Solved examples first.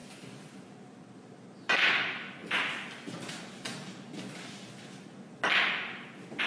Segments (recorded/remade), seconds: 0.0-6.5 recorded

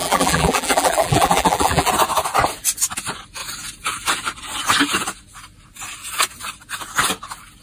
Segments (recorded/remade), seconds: 0.0-1.9 remade; 1.9-7.6 recorded

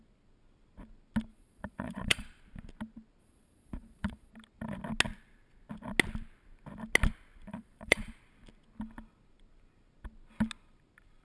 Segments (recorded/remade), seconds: 0.0-1.3 recorded; 1.3-2.4 remade; 2.4-3.2 recorded; 3.2-4.3 remade; 4.3-7.5 recorded; 7.5-8.2 remade; 8.2-11.2 recorded

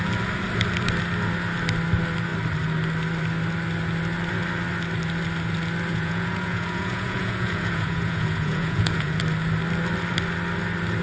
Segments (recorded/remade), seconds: 0.0-5.9 recorded; 5.9-9.2 remade; 9.2-11.0 recorded

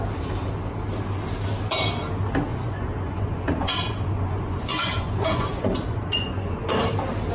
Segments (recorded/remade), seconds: 0.0-2.5 recorded; 2.5-6.7 remade; 6.7-7.3 recorded